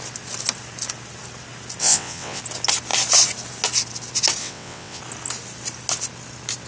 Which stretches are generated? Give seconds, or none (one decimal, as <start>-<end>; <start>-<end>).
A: 1.8-2.4; 4.4-5.0